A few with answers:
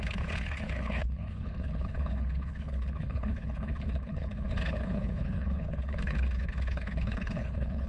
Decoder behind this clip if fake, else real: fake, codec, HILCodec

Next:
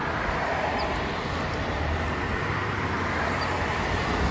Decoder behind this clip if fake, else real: real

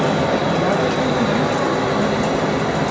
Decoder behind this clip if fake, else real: real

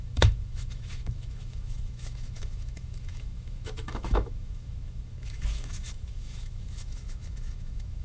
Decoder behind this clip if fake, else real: fake, autoencoder, DAC-VAE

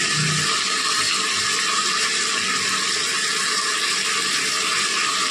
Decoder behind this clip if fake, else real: real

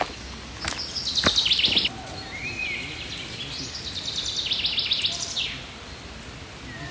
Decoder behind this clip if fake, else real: real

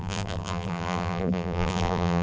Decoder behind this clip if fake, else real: fake, vocoder, BigVGAN v2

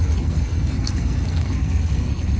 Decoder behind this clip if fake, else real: fake, codec, SNAC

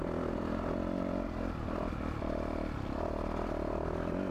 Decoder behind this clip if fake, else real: real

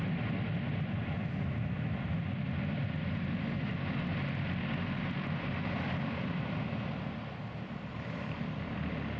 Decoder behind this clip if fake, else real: real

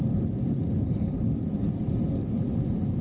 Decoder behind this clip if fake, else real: fake, vocoder, BigVGAN v2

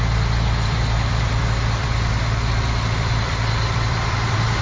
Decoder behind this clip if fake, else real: fake, vocoder, BigVGAN v2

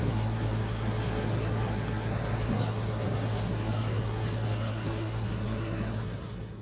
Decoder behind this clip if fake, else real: fake, codec, SNAC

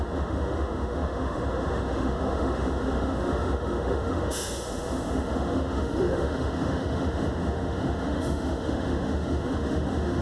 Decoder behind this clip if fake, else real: fake, autoencoder, DAC-VAE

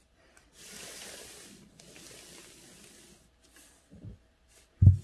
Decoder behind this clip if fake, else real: real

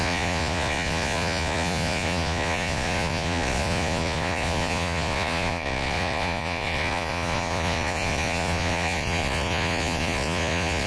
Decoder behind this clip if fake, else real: fake, vocoder, Vocos